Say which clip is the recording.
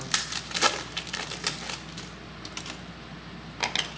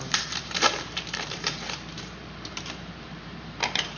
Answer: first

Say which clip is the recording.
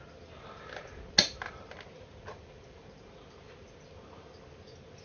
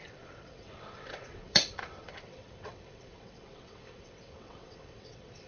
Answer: first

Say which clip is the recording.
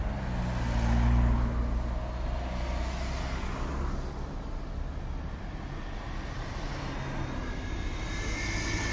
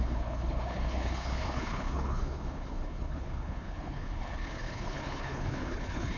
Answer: first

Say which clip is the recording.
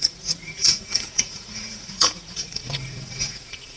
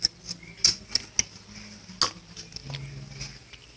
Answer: second